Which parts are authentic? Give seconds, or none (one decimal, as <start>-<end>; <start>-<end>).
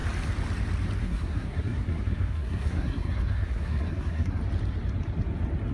0.0-1.0; 4.4-5.7